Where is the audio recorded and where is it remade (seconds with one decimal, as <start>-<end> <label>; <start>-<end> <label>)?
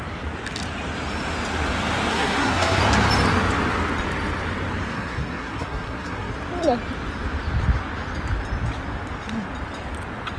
0.0-2.1 recorded; 2.1-2.8 remade; 2.8-4.9 recorded; 4.9-6.3 remade; 6.3-10.4 recorded